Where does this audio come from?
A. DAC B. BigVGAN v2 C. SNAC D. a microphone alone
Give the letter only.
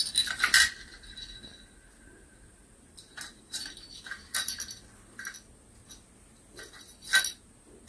D